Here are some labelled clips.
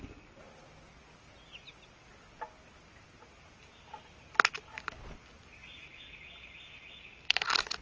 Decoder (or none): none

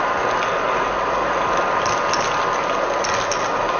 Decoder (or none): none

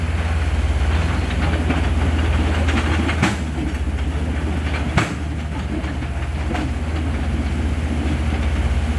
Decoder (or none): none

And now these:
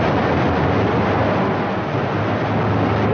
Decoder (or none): none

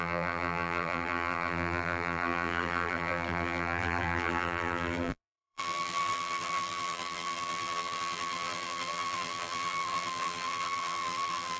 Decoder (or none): vocoder, BigVGAN v2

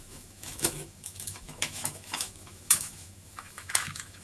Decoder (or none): autoencoder, DAC-VAE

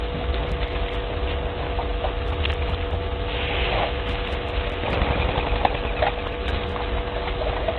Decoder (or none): none